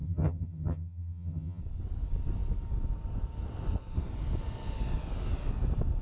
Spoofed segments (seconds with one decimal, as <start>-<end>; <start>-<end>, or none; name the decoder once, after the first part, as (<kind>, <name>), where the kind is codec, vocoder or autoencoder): 0.0-1.6 (vocoder, HiFi-GAN)